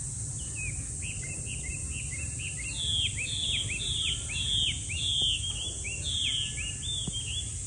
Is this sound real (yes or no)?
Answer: yes